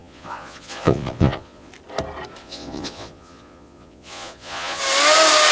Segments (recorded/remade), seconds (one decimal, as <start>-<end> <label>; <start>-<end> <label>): 0.0-1.7 remade; 1.7-2.4 recorded; 2.4-4.8 remade; 4.8-5.5 recorded